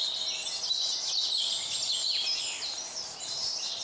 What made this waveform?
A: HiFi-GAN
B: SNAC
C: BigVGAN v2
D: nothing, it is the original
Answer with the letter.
D